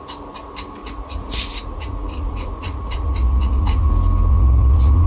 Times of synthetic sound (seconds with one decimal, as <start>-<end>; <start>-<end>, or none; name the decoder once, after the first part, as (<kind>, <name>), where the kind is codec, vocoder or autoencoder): 0.8-3.9 (vocoder, Vocos); 4.3-5.1